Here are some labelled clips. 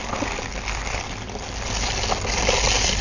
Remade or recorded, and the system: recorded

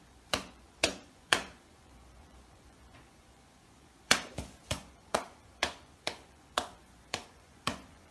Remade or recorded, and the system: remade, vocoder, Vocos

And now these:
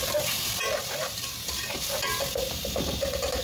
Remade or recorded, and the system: remade, vocoder, BigVGAN v2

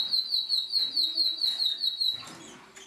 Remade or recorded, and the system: recorded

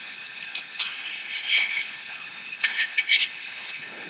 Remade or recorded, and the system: remade, codec, HILCodec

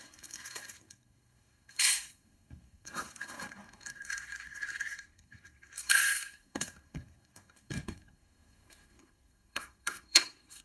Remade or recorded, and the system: remade, codec, SNAC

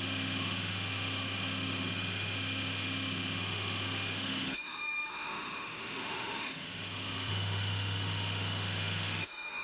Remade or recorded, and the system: remade, autoencoder, DAC-VAE